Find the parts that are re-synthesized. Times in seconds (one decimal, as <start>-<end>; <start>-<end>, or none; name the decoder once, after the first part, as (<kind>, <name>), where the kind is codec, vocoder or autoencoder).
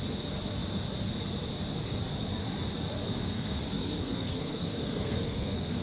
3.0-5.8 (codec, SNAC)